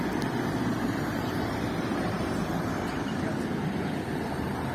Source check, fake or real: fake